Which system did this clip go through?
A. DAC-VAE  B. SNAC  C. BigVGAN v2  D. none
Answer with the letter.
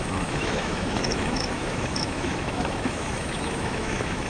A